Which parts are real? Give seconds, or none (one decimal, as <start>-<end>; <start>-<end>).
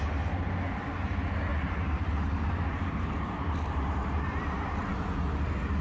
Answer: 0.0-1.5; 2.1-2.7; 4.7-5.8